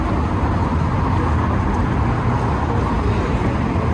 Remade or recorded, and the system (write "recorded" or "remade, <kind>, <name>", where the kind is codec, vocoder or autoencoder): recorded